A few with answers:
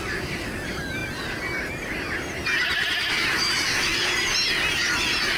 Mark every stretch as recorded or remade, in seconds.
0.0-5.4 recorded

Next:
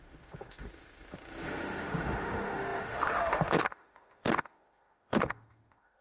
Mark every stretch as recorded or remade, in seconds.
0.0-6.0 remade

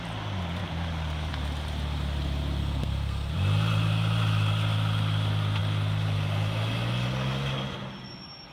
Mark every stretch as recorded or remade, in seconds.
0.0-2.6 recorded; 2.6-3.3 remade; 3.3-8.5 recorded

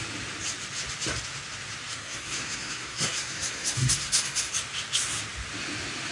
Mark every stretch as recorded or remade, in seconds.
0.0-1.9 recorded; 1.9-4.5 remade; 4.5-6.1 recorded

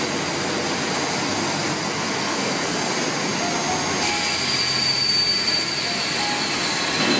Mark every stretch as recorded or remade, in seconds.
0.0-2.2 recorded; 2.2-2.9 remade; 2.9-7.2 recorded